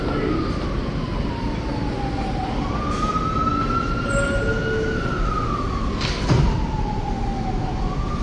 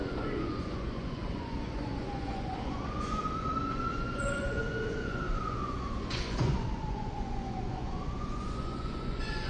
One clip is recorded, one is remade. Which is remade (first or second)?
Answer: second